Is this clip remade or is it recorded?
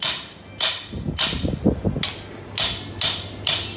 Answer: recorded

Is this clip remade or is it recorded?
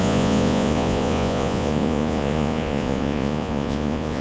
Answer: remade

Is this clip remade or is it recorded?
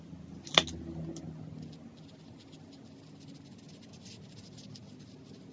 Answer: recorded